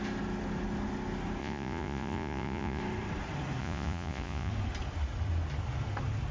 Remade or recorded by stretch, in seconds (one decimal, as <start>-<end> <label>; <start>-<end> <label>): 0.0-1.4 recorded; 1.4-2.8 remade; 2.8-3.6 recorded; 3.6-4.5 remade; 4.5-6.3 recorded

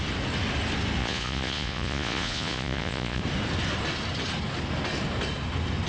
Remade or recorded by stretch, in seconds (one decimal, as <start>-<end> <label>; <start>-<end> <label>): 0.0-1.0 recorded; 1.0-3.2 remade; 3.2-5.9 recorded

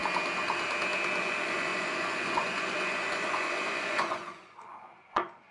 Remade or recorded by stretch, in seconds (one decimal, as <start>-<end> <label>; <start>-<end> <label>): 0.0-1.2 recorded; 1.2-5.5 remade

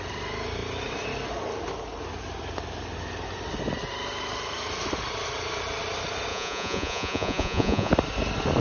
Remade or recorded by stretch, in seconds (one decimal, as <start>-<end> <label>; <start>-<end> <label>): 0.0-6.3 recorded; 6.3-7.9 remade; 7.9-8.6 recorded

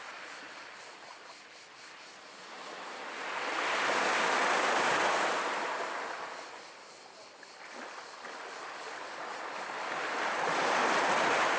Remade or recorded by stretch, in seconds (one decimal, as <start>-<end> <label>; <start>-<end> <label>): 0.0-11.6 recorded

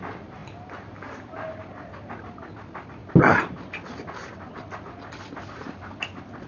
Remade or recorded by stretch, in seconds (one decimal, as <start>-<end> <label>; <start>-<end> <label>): 0.0-6.5 recorded

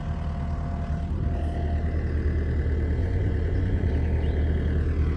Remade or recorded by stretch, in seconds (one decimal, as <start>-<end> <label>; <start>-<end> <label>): 0.0-3.0 recorded; 3.0-3.9 remade; 3.9-5.2 recorded